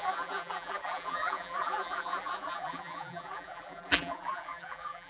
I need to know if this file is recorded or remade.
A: remade